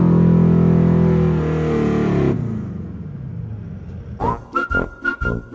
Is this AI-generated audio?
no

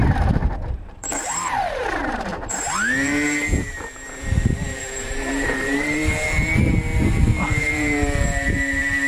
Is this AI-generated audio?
yes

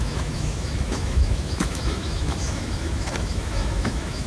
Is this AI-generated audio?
yes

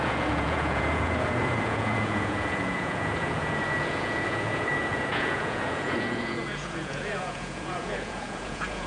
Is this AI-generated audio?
yes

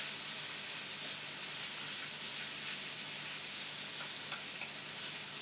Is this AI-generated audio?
no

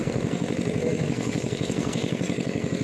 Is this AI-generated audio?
yes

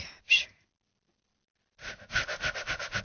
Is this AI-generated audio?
no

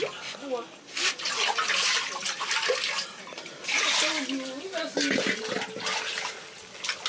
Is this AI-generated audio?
no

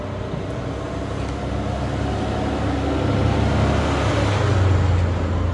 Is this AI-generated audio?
no